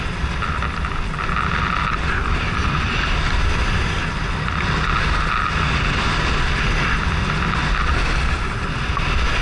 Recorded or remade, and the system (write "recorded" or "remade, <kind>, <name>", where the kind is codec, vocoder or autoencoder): recorded